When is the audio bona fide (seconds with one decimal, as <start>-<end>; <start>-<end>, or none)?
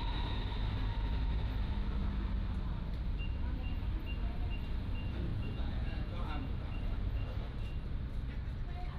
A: 0.0-5.3; 6.5-9.0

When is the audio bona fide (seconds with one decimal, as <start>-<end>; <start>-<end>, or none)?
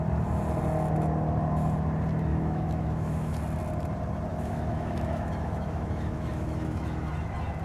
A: 0.0-2.3; 3.4-4.3; 7.1-7.6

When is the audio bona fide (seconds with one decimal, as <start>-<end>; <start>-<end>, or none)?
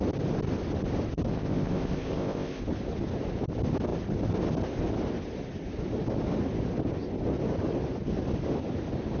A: 0.0-1.3; 2.6-9.2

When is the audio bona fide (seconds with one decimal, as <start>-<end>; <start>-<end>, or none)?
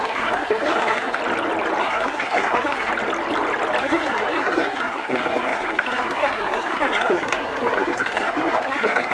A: 1.2-1.8; 2.9-3.8